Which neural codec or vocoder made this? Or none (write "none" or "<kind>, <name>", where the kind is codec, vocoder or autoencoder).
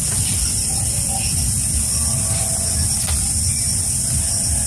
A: none